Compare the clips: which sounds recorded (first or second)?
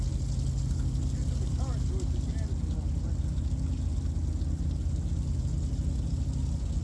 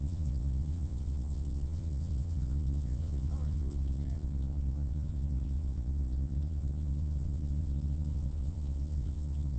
first